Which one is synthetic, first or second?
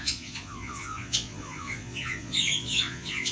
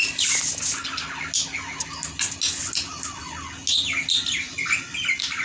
first